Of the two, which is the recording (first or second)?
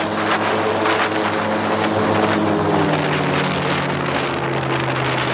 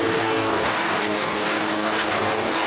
first